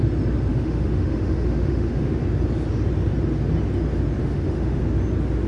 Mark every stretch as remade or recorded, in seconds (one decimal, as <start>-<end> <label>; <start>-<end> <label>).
0.0-0.5 recorded; 0.5-2.2 remade; 2.2-4.2 recorded; 4.2-4.8 remade; 4.8-5.5 recorded